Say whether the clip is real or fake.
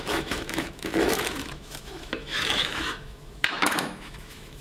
fake